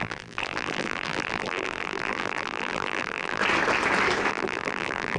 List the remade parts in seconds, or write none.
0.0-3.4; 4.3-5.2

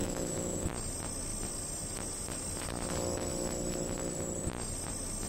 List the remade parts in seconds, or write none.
0.0-0.7

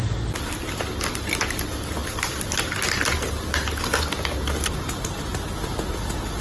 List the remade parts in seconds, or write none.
none

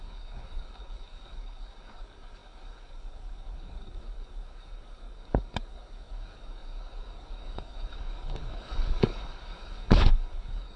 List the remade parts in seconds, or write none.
0.0-10.8